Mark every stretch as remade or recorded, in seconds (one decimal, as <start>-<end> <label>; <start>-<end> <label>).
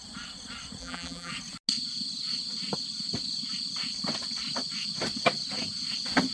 0.0-0.8 recorded; 0.8-1.3 remade; 1.3-6.3 recorded